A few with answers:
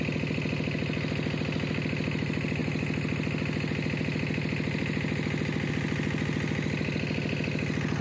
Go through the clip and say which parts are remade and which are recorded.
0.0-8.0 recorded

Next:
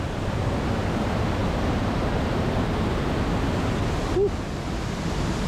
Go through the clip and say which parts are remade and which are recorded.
0.0-1.4 recorded; 1.4-2.5 remade; 2.5-5.5 recorded

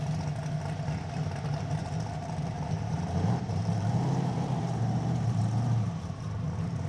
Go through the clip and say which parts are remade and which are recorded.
0.0-1.8 recorded; 1.8-5.4 remade; 5.4-6.9 recorded

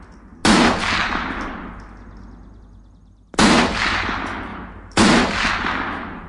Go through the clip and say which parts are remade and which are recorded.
0.0-4.5 recorded; 4.5-5.5 remade; 5.5-6.3 recorded

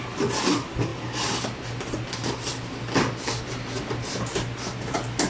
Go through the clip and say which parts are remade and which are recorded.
0.0-5.3 recorded

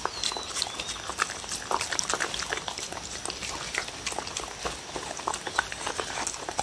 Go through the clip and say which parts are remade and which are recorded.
0.0-6.6 remade